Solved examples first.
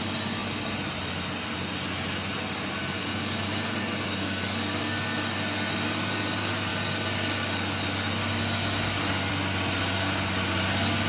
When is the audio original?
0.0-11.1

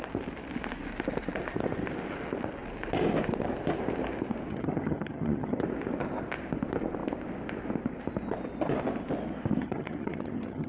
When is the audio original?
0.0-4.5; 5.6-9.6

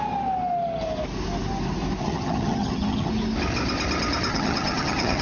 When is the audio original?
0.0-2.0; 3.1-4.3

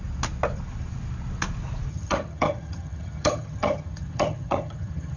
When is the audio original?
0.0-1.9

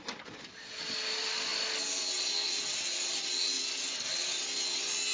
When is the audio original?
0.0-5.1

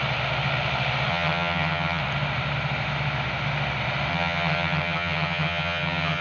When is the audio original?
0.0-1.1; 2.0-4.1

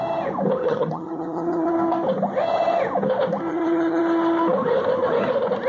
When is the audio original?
0.0-0.6; 1.7-3.5; 4.0-5.7

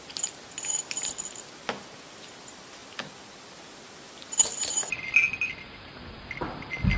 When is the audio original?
0.0-7.0